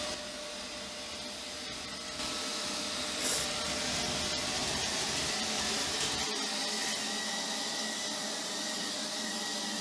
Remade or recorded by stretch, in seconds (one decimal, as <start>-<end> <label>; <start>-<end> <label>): 0.0-4.6 recorded; 4.6-6.2 remade; 6.2-9.8 recorded